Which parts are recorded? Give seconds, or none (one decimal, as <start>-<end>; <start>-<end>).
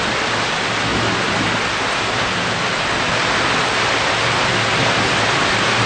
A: 0.0-5.9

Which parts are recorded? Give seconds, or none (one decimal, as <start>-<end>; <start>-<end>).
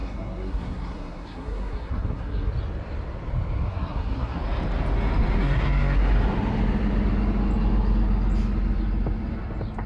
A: 2.5-3.7; 4.4-5.4; 6.0-9.9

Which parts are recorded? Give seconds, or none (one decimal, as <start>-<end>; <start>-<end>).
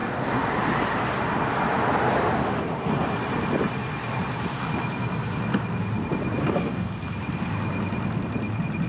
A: 0.5-6.4; 6.9-8.9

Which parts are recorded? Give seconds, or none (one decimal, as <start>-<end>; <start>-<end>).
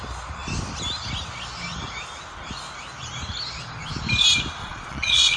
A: 0.0-4.6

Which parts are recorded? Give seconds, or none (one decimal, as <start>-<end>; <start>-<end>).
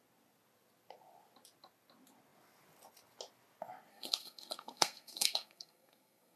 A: 0.0-3.9